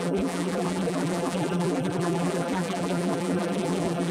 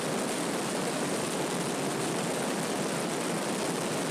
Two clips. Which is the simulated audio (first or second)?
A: first